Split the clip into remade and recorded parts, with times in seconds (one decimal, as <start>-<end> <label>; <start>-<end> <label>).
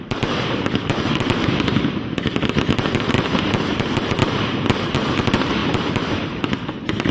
0.0-4.2 remade; 4.2-4.9 recorded; 4.9-7.1 remade